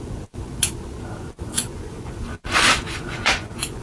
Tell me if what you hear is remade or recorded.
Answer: remade